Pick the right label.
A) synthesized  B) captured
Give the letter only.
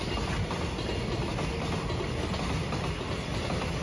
B